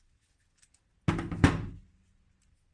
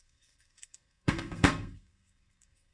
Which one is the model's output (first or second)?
second